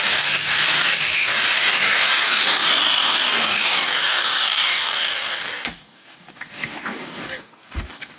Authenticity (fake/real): fake